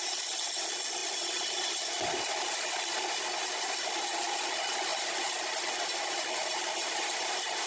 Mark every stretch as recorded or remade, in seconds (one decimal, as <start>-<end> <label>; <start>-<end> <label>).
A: 0.0-7.7 recorded